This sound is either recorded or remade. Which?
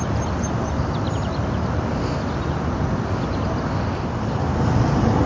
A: recorded